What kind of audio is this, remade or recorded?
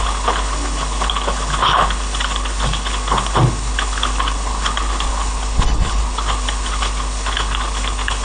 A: remade